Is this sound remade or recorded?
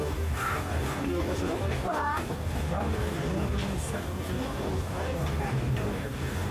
remade